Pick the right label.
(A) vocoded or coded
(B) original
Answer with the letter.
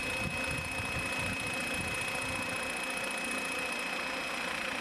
B